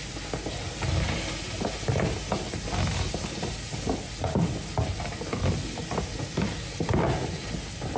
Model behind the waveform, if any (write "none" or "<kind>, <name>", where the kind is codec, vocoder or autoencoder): none